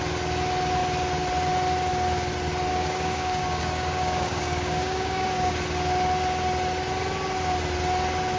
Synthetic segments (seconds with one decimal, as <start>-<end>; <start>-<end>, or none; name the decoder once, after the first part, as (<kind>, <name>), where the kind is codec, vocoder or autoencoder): 2.7-5.5 (codec, DAC)